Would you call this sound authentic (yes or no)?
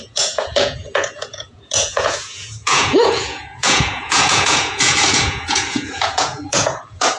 no